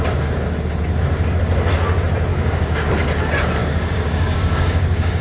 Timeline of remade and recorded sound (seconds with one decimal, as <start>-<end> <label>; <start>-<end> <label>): 0.0-2.3 recorded; 2.3-2.9 remade; 2.9-3.6 recorded; 3.6-5.2 remade